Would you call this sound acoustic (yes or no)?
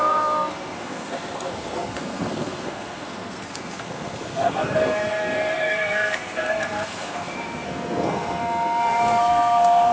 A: no